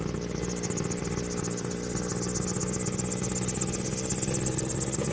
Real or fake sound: real